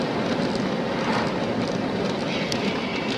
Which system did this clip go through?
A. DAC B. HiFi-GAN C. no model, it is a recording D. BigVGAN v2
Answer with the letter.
C